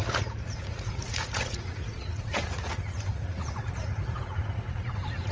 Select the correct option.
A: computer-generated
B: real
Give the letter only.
A